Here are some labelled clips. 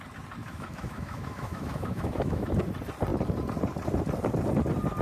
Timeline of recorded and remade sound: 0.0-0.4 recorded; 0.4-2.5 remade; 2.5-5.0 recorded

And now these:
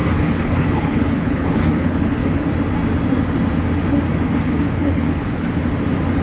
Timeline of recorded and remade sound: 0.0-2.4 remade; 2.4-4.3 recorded; 4.3-5.5 remade; 5.5-6.2 recorded